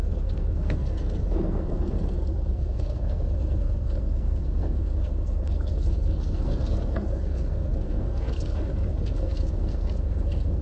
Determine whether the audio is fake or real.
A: fake